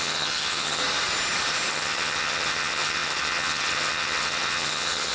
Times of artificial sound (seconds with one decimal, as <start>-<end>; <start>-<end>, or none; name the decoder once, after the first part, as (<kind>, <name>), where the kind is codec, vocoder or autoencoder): 0.0-0.8 (vocoder, HiFi-GAN); 1.7-5.1